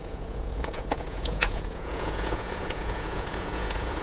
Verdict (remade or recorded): remade